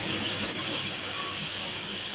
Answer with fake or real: fake